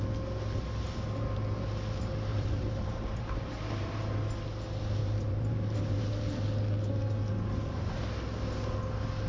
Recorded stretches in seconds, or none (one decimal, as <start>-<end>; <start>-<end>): 0.0-2.3; 4.0-5.0; 6.1-9.3

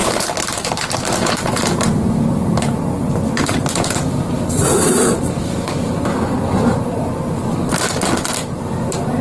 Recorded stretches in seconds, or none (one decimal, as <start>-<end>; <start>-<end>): 5.2-9.2

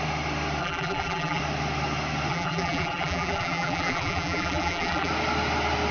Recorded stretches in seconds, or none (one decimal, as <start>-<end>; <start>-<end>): 0.0-0.6; 1.4-2.3; 5.1-5.9

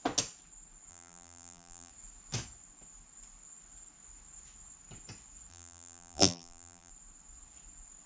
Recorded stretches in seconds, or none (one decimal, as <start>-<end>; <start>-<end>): 0.0-0.9; 1.9-5.5; 6.9-8.1

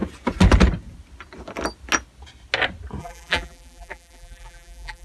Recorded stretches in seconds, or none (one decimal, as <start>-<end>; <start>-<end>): 0.0-3.0